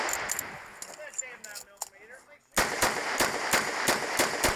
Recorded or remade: recorded